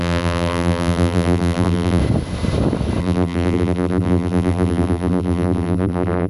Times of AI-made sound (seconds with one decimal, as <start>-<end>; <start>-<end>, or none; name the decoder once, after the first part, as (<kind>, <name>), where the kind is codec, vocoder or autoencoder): 0.0-2.0 (vocoder, BigVGAN v2); 3.0-6.3